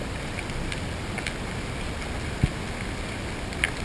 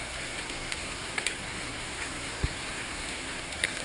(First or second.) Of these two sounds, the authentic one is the first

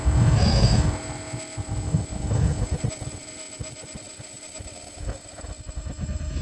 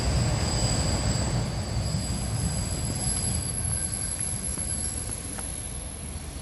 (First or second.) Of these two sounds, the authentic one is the second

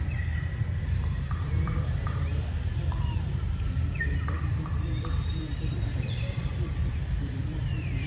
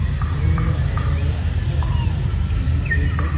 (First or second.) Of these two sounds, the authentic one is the second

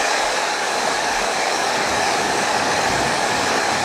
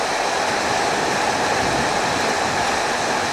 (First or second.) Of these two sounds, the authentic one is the second